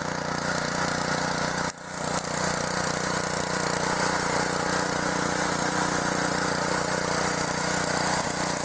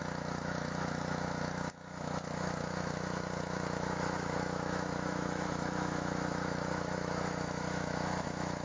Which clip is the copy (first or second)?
second